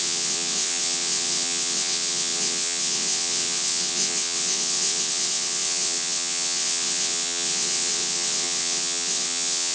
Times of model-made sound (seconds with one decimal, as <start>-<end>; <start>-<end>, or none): 0.0-9.7